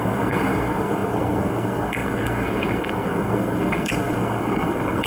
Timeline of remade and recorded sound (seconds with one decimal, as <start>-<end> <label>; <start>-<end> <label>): 0.0-5.1 remade